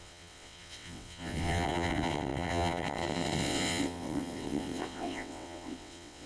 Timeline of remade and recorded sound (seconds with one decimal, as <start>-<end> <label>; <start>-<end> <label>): 0.0-6.3 remade